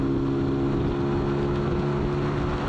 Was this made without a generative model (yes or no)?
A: yes